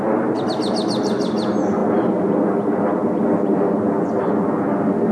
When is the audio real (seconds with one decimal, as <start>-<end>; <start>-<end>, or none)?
0.0-5.1